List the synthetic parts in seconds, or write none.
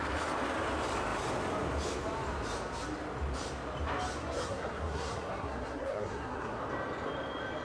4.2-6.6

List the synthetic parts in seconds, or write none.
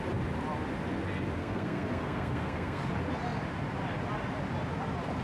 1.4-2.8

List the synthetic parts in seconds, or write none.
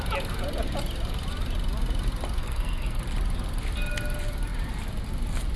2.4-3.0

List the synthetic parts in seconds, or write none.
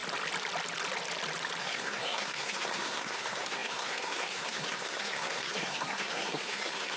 1.6-7.0